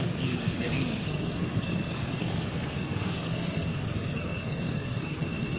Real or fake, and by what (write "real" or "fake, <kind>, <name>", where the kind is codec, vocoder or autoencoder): fake, codec, SNAC